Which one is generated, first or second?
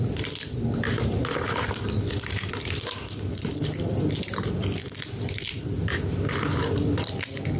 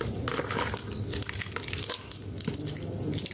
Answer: first